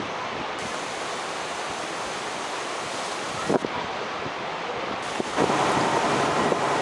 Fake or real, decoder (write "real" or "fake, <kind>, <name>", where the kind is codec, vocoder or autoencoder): real